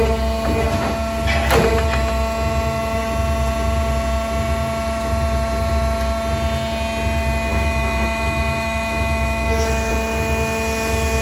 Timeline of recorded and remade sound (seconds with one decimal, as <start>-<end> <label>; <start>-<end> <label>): 0.0-7.5 recorded; 7.5-9.9 remade; 9.9-11.2 recorded